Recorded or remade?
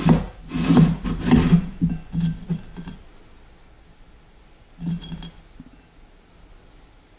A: recorded